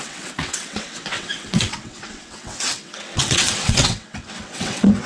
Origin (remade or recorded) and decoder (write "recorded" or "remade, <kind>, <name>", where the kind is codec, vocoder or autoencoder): remade, vocoder, WaveNeXt